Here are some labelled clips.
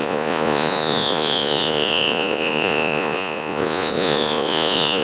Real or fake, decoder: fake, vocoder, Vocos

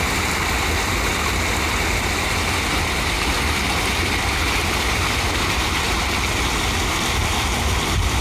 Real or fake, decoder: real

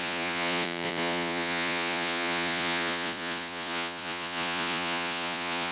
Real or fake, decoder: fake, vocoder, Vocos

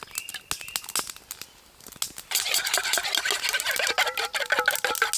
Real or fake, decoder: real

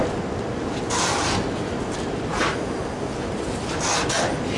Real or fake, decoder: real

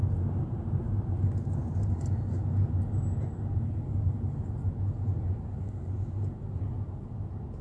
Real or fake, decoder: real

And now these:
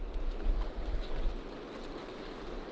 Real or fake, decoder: real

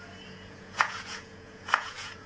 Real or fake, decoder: fake, vocoder, Vocos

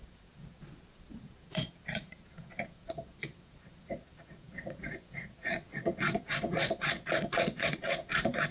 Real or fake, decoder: fake, vocoder, Vocos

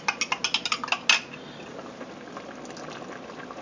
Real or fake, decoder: real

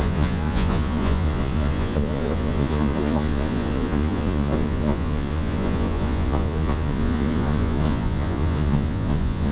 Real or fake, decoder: fake, vocoder, Vocos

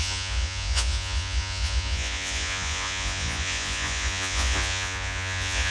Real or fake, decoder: fake, vocoder, Vocos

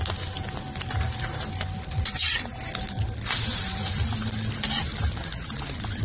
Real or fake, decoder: real